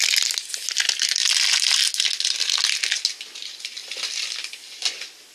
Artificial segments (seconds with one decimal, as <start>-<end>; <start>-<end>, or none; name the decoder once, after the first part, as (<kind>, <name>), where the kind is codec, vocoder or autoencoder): none